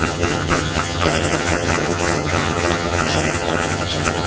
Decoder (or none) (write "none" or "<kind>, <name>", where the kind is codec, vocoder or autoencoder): vocoder, HiFi-GAN